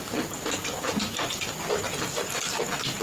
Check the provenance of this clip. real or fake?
real